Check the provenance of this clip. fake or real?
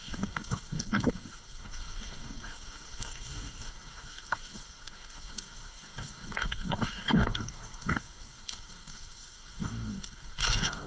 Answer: fake